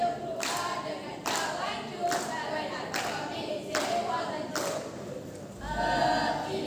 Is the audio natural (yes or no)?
yes